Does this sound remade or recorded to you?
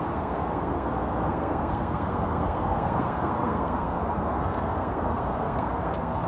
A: remade